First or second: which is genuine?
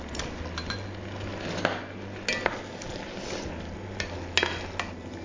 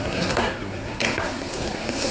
first